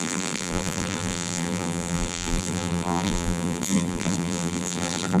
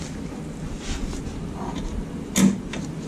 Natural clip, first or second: second